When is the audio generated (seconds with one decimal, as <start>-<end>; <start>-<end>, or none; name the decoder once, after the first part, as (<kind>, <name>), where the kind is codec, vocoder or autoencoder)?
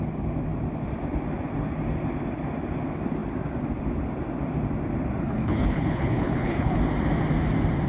5.2-6.8 (codec, HILCodec)